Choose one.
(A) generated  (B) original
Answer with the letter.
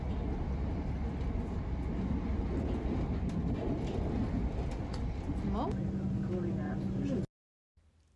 B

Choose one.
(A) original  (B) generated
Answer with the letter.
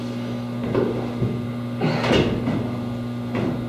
A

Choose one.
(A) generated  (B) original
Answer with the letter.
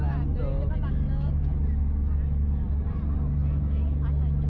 B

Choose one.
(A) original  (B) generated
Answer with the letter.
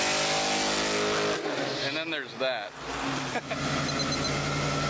A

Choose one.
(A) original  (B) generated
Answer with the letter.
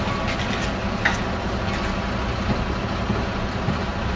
A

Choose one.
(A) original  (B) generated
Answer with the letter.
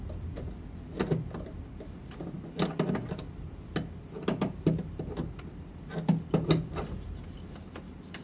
A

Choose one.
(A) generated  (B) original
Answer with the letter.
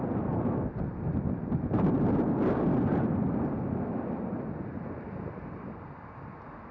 B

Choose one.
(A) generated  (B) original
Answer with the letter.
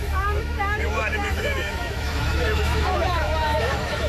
A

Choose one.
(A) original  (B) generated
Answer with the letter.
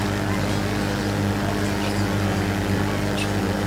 A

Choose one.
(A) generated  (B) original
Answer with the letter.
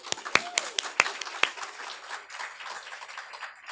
B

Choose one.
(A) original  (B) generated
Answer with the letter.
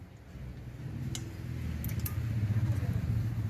A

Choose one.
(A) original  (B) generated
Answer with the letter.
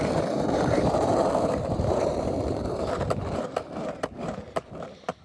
B